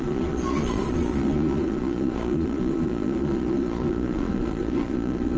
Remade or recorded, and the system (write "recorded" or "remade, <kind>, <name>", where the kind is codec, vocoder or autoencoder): remade, vocoder, Vocos